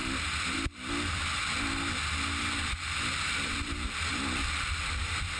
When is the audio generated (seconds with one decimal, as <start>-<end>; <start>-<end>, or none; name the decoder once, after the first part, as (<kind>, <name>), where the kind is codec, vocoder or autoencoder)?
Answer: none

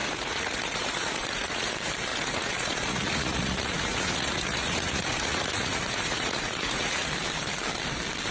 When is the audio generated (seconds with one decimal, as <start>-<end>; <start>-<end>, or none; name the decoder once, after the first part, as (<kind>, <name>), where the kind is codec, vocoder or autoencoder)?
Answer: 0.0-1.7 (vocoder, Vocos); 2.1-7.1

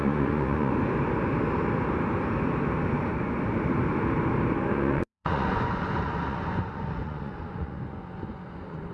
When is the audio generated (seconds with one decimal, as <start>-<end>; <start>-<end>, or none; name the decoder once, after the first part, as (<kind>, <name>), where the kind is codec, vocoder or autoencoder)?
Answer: 0.0-0.7 (vocoder, Vocos); 4.7-8.9

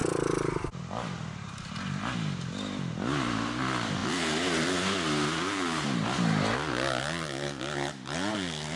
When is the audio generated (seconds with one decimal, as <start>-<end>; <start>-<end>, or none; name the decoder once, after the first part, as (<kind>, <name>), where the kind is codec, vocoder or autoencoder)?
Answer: none

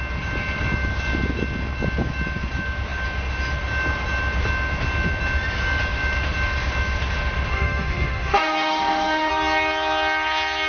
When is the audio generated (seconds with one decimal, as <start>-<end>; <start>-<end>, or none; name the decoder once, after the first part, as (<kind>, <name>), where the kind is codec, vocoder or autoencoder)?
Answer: 7.5-9.3 (autoencoder, DAC-VAE)

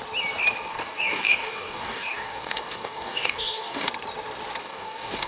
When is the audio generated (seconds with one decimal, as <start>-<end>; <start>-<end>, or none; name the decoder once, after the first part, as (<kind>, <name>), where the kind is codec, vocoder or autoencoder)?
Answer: 0.7-3.9 (codec, DAC); 4.6-5.3

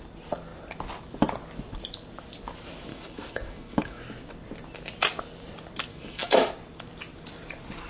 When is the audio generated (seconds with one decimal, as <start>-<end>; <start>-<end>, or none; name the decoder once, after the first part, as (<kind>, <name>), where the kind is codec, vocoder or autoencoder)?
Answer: 2.9-4.0 (autoencoder, DAC-VAE); 5.9-6.5